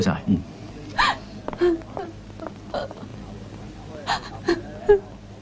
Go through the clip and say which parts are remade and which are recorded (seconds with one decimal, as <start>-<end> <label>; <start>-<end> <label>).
0.0-3.1 recorded; 3.1-4.8 remade; 4.8-5.4 recorded